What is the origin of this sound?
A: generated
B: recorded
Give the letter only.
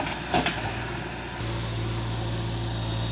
B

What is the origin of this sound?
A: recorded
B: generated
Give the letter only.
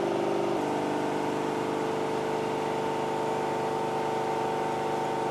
A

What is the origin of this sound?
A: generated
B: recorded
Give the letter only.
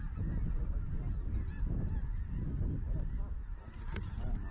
B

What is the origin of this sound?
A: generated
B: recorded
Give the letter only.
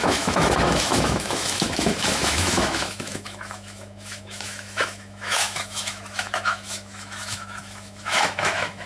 A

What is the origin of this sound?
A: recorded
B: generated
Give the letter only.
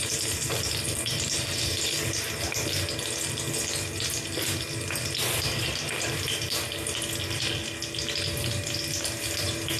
A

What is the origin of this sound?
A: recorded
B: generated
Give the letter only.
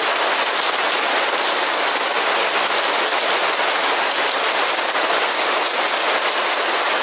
A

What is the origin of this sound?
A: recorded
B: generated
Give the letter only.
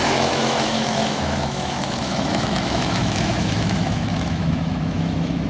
B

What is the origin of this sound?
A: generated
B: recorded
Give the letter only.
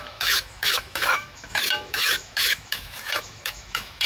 A